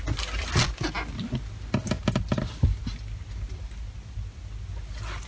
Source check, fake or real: real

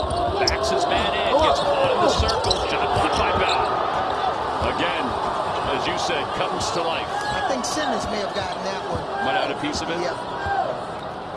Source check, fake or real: real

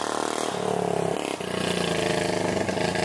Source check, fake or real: real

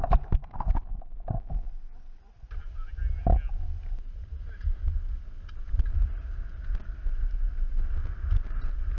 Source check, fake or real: real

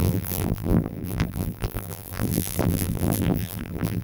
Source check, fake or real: fake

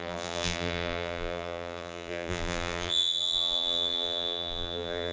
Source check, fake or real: fake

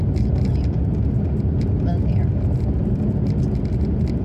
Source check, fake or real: real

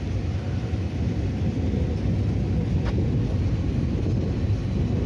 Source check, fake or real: real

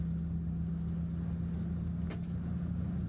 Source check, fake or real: real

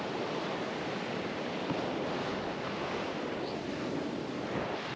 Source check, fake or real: real